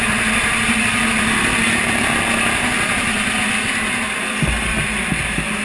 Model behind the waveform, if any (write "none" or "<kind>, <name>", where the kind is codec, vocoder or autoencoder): none